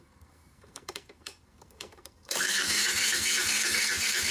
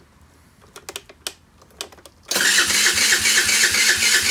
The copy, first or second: first